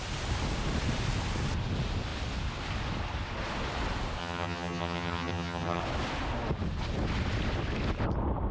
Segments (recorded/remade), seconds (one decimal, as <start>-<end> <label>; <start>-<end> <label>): 0.0-4.2 recorded; 4.2-5.8 remade; 5.8-8.5 recorded